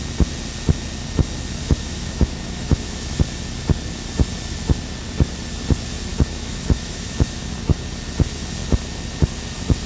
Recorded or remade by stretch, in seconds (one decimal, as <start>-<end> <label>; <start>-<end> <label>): 0.0-1.6 recorded; 1.6-3.2 remade; 3.2-6.1 recorded; 6.1-7.4 remade; 7.4-9.9 recorded